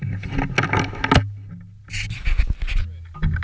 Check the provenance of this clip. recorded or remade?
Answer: recorded